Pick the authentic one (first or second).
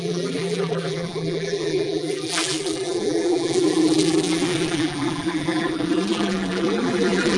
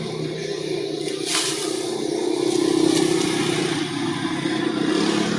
second